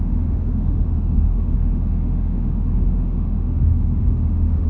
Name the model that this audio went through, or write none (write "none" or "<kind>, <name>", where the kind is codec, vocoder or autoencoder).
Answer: autoencoder, DAC-VAE